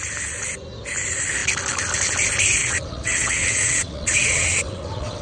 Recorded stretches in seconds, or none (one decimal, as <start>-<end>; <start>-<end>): 0.0-2.6